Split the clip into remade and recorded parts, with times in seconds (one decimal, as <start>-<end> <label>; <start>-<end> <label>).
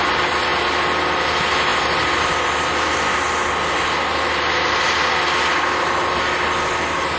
0.0-7.2 recorded